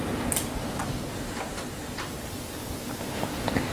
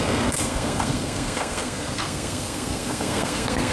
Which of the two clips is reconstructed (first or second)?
second